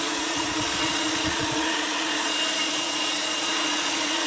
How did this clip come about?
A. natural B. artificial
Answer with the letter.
B